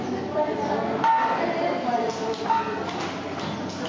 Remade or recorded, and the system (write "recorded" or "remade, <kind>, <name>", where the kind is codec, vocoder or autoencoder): recorded